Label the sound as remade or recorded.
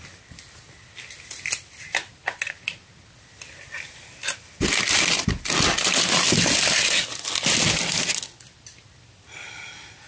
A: recorded